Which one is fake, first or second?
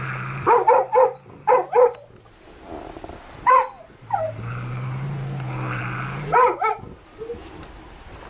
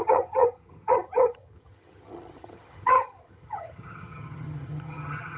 second